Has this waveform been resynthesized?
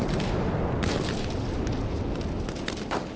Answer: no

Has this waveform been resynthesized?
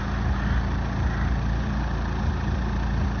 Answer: no